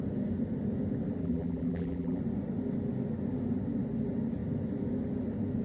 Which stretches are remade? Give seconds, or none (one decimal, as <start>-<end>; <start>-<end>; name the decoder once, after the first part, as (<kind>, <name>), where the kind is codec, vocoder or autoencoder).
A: 1.2-2.2 (vocoder, BigVGAN v2)

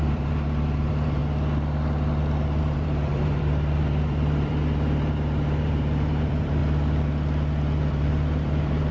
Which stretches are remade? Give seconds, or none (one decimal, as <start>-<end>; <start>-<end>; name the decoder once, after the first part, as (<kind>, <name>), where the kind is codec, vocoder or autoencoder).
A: 0.0-1.2 (vocoder, BigVGAN v2); 2.6-6.6; 7.9-8.9

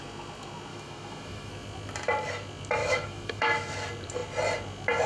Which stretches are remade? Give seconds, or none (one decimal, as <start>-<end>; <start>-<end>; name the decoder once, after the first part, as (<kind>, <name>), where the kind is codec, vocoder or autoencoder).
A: 0.7-1.5 (autoencoder, DAC-VAE); 2.8-3.7

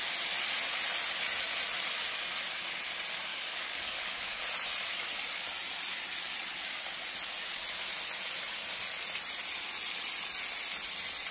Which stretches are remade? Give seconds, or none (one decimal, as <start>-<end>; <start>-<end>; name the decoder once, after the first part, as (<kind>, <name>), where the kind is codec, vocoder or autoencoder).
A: 3.3-4.4 (codec, DAC)

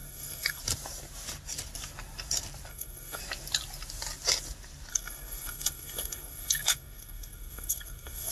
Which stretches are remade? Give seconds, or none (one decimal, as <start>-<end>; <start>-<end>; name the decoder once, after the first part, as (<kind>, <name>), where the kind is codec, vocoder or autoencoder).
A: 0.0-0.6 (codec, SNAC); 2.7-3.2; 4.9-8.3